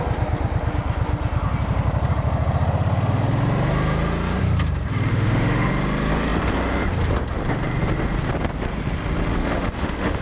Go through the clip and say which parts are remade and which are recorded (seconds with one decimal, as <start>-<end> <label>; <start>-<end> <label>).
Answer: 0.0-5.1 recorded; 5.1-5.7 remade; 5.7-9.4 recorded; 9.4-10.2 remade